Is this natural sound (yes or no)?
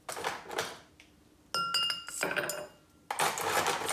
yes